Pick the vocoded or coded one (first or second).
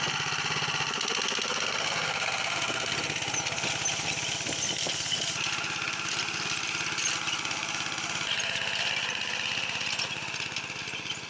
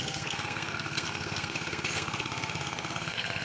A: second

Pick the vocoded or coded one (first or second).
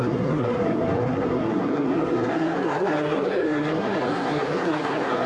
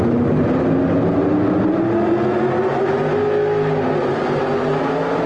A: first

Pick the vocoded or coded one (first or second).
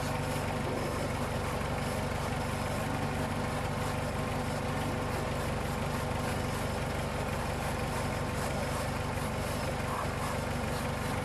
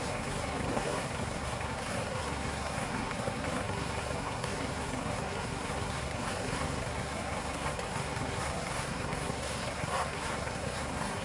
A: second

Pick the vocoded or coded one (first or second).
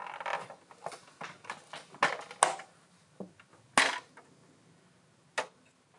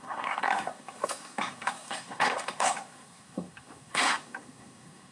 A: second